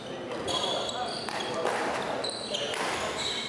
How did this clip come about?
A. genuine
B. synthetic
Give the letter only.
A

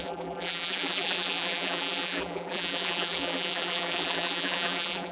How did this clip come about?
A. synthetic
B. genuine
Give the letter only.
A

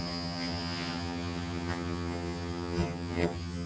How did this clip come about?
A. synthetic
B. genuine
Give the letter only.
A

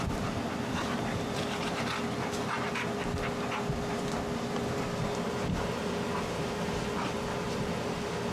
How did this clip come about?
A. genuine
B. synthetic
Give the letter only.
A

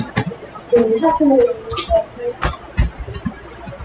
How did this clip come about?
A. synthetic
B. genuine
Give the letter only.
B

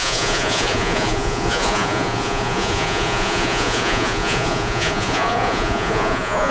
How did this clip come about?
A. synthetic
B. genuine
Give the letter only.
A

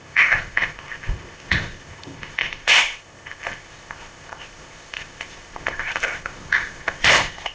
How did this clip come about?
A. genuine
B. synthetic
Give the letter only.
B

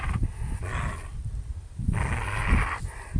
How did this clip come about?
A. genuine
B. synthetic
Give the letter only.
A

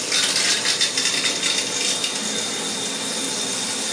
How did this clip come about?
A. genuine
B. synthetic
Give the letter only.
A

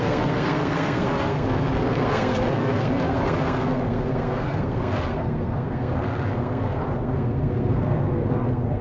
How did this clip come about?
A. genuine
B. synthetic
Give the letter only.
B